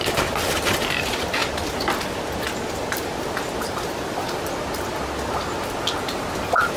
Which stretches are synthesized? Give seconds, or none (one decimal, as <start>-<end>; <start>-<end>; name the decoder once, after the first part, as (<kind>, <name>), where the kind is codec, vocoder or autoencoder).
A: none